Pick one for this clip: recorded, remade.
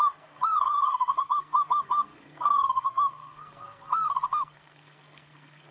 remade